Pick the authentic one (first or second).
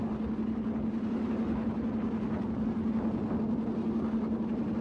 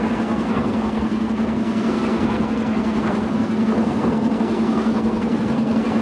first